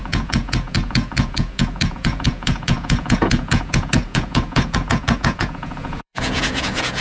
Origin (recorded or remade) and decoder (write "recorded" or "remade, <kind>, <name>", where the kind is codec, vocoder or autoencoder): remade, vocoder, Vocos